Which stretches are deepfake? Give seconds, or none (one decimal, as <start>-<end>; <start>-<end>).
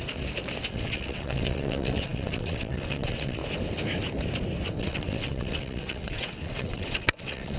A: 0.7-3.4; 4.8-7.6